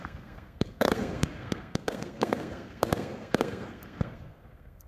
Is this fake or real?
fake